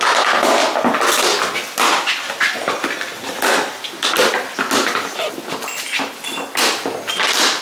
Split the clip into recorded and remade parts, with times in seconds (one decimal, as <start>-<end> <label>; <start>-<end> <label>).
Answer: 0.0-7.6 recorded